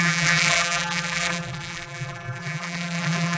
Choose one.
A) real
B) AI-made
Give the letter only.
B